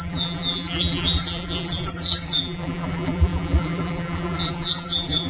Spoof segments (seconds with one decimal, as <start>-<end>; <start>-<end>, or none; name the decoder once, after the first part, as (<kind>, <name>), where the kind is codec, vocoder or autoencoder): 0.0-5.3 (vocoder, BigVGAN v2)